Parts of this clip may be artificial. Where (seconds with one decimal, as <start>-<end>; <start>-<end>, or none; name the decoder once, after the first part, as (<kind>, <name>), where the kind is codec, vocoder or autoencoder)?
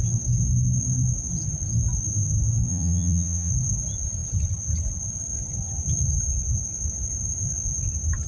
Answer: 2.7-3.5 (vocoder, Vocos)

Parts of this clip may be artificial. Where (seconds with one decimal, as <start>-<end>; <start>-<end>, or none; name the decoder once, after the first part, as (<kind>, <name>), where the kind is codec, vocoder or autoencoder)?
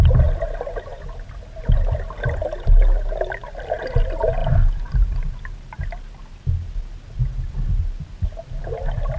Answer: none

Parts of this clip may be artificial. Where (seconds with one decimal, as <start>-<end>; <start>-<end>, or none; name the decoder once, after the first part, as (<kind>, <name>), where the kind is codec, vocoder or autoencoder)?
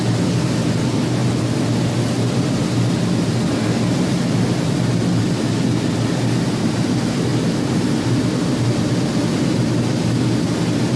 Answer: none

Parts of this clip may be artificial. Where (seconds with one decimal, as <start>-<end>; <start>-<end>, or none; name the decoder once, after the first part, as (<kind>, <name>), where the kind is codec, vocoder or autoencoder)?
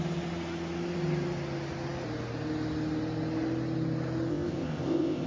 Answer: 4.3-5.3 (codec, ZipCodec)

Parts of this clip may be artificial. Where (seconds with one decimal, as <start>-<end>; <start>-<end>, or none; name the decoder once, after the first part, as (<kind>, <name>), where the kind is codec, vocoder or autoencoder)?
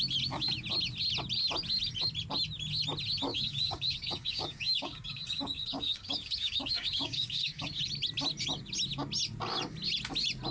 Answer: 3.3-7.8 (codec, DAC)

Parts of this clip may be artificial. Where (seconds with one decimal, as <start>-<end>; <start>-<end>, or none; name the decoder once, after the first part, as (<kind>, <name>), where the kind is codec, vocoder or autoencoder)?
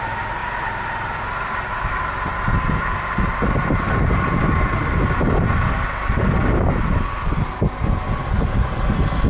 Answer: none